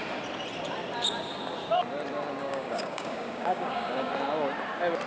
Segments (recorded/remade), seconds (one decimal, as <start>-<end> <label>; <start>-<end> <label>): 0.0-2.4 recorded; 2.4-4.1 remade; 4.1-5.1 recorded